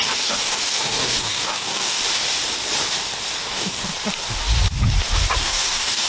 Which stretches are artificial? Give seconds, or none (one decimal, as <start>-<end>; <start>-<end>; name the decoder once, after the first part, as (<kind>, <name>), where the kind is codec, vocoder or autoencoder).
0.0-2.0 (codec, DAC); 3.5-3.9; 5.4-6.1